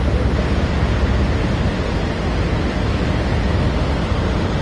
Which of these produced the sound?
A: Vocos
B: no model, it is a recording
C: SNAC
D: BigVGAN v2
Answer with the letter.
D